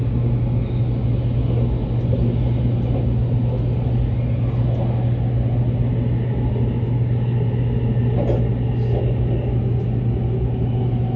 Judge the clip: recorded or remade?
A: recorded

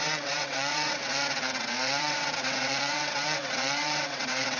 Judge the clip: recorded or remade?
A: remade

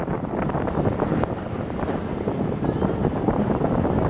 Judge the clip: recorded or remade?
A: recorded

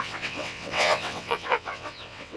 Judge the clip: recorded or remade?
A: remade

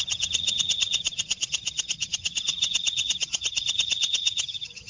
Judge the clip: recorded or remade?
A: remade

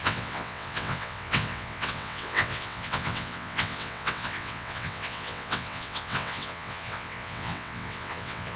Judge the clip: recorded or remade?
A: remade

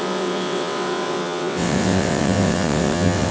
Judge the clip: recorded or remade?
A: remade